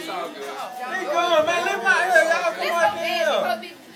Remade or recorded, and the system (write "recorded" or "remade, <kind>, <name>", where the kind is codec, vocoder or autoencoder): remade, vocoder, Vocos